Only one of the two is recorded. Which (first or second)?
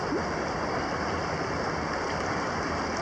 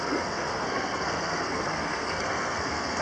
first